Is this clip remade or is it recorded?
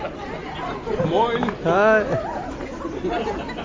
recorded